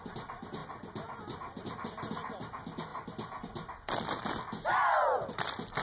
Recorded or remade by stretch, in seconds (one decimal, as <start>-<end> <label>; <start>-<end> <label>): 0.0-5.8 recorded